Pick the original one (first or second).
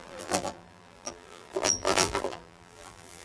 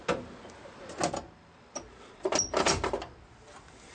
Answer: second